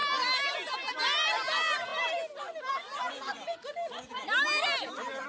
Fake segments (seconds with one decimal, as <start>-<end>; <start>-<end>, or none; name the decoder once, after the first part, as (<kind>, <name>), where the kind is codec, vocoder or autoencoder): none